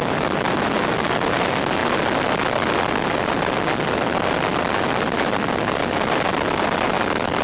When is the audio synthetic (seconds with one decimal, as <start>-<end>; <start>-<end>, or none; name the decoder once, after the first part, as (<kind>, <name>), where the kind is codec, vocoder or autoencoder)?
none